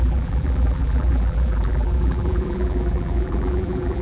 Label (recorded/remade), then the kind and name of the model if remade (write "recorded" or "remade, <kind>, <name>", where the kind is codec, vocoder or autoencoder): remade, vocoder, BigVGAN v2